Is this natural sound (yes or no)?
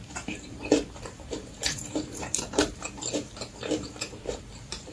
no